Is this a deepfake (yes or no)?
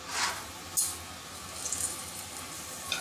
no